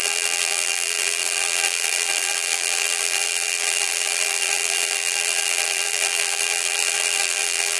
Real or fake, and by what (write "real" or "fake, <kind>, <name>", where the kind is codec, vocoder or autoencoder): fake, vocoder, BigVGAN v2